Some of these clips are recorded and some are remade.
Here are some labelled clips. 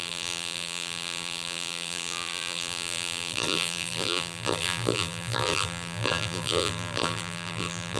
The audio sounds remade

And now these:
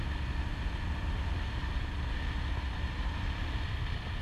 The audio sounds recorded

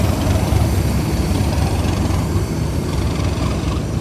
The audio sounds remade